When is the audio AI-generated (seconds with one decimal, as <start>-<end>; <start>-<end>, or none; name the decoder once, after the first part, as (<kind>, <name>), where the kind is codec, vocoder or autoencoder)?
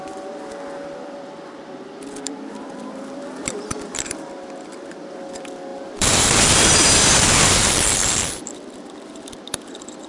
0.0-10.1 (vocoder, BigVGAN v2)